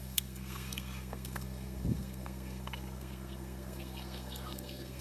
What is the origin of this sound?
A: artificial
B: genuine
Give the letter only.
A